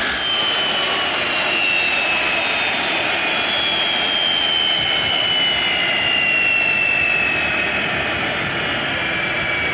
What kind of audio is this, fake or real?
real